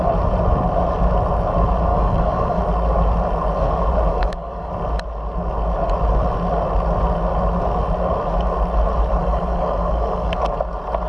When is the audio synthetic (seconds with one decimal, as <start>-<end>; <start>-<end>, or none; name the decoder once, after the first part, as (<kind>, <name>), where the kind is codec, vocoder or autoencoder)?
1.9-2.6 (codec, DAC); 4.1-4.7; 9.2-10.4